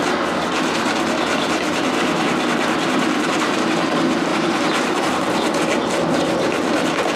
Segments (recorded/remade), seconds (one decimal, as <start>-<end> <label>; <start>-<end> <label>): 0.0-4.3 recorded; 4.3-5.1 remade; 5.1-7.2 recorded